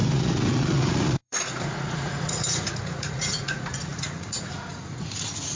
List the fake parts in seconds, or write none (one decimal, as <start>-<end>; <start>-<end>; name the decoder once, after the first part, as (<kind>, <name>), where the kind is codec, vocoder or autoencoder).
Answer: 0.0-5.6 (vocoder, Vocos)